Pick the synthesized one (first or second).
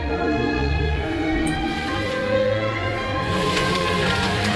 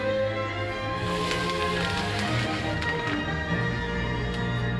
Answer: first